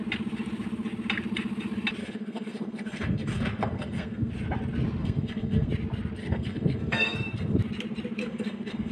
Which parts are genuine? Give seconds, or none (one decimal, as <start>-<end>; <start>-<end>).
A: 0.0-2.0; 4.3-5.0; 5.7-6.2; 7.6-8.2